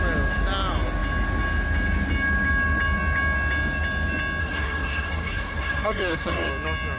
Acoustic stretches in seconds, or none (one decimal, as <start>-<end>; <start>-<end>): 0.0-4.4; 6.5-7.0